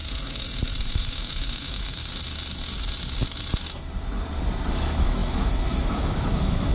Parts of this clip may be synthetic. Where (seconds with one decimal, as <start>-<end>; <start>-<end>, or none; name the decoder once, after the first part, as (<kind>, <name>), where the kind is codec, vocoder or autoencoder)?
0.8-2.0 (autoencoder, DAC-VAE); 4.7-6.7

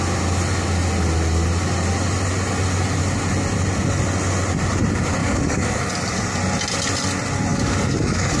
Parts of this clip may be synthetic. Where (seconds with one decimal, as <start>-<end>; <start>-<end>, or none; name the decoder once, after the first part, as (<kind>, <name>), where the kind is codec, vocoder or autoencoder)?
5.2-5.8 (codec, DAC); 7.5-8.4

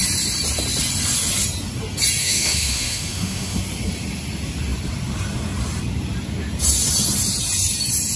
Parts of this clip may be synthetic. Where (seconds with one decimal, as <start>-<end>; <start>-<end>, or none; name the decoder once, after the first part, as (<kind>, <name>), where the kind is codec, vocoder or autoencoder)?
2.2-3.6 (autoencoder, DAC-VAE)

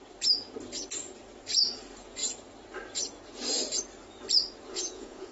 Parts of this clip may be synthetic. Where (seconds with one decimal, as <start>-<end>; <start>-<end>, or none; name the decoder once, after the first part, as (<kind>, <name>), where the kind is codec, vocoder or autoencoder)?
4.7-5.3 (vocoder, Vocos)

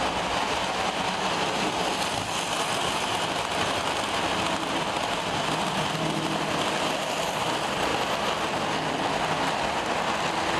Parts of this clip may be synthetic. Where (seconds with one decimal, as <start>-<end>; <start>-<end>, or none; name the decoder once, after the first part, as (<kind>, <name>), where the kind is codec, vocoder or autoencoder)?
none

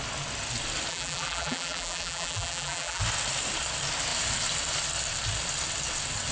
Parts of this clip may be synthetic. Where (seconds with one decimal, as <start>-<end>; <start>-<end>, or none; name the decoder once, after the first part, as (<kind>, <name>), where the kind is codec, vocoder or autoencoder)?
0.9-3.0 (vocoder, BigVGAN v2)

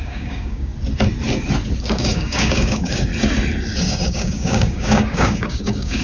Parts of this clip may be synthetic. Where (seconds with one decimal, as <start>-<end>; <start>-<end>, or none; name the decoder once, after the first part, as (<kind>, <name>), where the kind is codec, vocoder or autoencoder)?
0.0-0.7 (codec, DAC); 1.8-3.1; 3.8-6.0

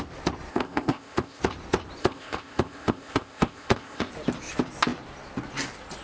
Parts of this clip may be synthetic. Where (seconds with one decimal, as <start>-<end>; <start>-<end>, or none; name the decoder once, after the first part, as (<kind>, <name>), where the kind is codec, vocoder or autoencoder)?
0.5-1.4 (codec, ZipCodec); 2.0-4.1